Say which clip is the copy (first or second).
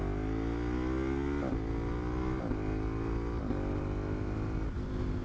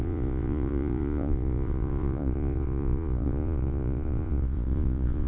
second